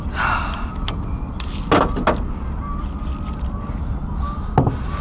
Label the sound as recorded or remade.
recorded